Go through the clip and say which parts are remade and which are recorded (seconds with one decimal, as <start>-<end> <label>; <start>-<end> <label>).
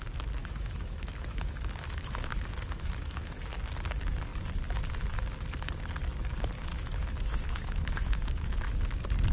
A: 0.0-0.4 recorded; 0.4-3.6 remade; 3.6-6.7 recorded; 6.7-8.2 remade; 8.2-9.3 recorded